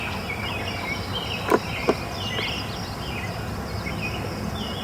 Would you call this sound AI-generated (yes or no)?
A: no